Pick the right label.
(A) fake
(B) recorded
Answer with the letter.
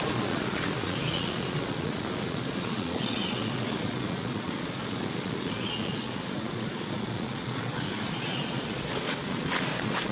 A